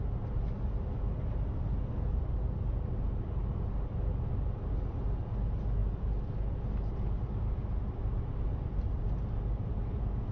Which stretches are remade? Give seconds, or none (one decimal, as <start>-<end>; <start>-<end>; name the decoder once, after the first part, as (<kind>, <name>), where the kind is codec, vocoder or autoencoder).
none